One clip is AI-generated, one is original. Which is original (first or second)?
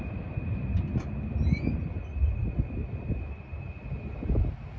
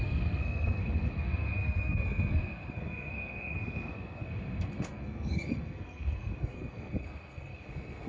first